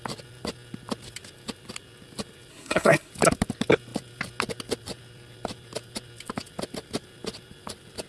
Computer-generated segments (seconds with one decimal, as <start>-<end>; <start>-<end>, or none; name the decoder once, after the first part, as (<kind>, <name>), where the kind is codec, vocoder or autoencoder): 2.5-3.1 (codec, SNAC)